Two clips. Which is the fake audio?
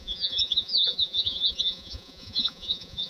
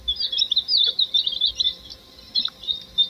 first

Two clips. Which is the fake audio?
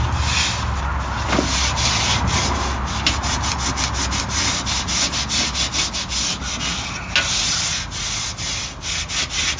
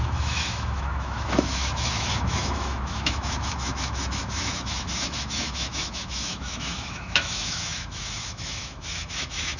second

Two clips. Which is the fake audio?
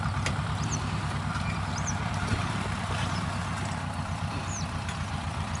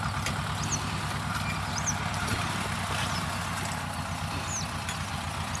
first